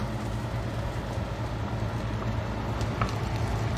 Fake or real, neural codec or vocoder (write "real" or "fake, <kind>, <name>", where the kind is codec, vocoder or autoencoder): real